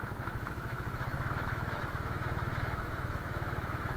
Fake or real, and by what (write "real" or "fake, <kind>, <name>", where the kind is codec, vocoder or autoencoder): fake, autoencoder, DAC-VAE